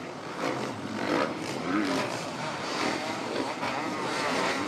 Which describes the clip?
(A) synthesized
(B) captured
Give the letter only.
A